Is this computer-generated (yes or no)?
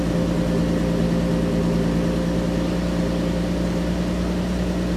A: no